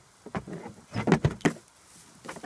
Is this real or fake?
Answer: real